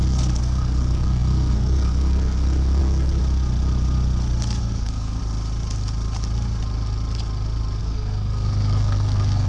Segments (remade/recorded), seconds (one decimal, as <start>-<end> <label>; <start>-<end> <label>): 0.0-3.2 remade; 3.2-4.6 recorded; 4.6-5.2 remade; 5.2-7.8 recorded; 7.8-9.5 remade